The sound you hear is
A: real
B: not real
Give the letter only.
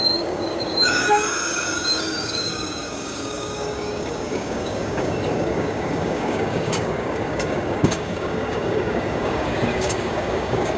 B